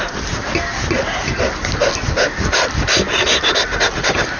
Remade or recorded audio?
recorded